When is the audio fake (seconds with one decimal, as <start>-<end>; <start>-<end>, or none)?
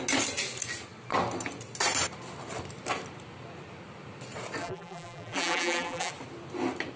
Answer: 4.6-6.1